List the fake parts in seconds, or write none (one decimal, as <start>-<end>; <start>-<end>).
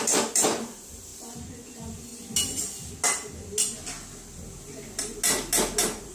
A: 0.0-1.1; 1.7-2.1